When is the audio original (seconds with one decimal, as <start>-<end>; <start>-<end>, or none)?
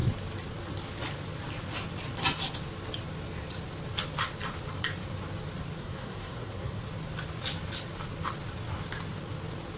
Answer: 0.0-5.8; 6.8-9.8